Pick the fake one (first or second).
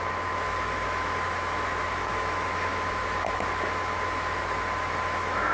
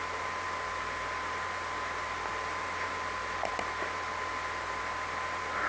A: first